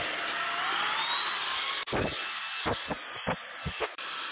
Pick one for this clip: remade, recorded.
recorded